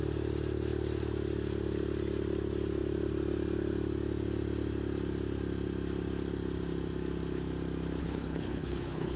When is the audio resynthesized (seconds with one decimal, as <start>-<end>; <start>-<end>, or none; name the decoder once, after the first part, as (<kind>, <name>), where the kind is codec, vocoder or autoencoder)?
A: 8.0-9.2 (codec, HILCodec)